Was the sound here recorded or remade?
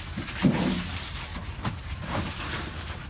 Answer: recorded